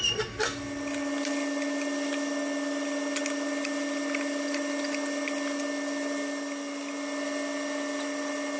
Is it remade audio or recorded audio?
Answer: recorded